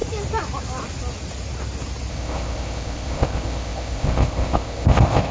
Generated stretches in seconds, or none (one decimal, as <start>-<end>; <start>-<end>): 2.1-5.3